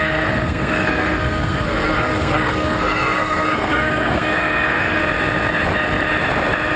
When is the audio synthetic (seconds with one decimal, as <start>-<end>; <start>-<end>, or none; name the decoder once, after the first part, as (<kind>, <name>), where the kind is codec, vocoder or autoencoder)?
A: 0.0-5.0 (codec, SNAC)